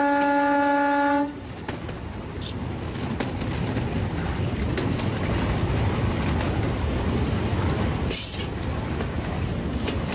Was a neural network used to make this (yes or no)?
no